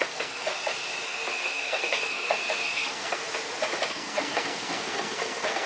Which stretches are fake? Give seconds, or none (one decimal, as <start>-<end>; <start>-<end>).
0.0-0.5; 1.3-3.2; 3.9-5.7